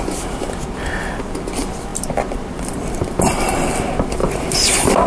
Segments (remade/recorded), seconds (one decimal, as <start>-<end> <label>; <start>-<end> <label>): 0.0-1.9 recorded; 1.9-3.5 remade; 3.5-5.1 recorded